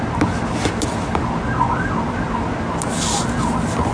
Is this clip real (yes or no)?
yes